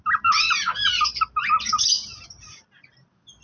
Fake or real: real